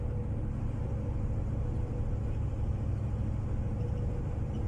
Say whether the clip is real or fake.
real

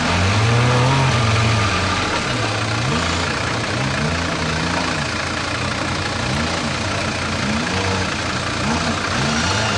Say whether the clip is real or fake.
real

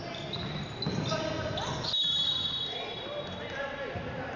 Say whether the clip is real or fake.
real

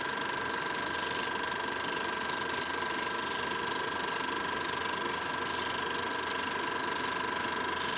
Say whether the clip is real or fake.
real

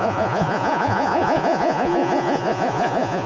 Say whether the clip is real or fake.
fake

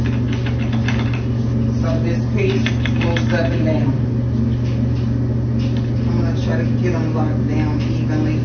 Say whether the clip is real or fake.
real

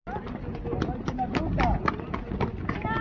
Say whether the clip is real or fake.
real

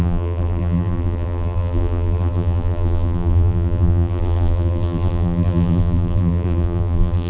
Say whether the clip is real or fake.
fake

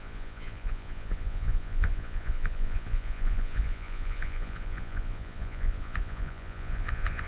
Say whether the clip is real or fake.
fake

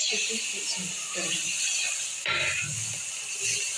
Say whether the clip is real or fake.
real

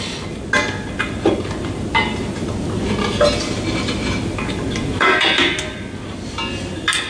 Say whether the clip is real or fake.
real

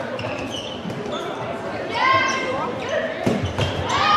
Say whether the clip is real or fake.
fake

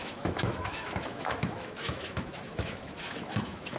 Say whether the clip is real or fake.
fake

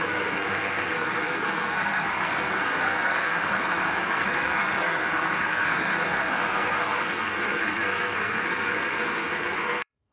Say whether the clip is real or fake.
fake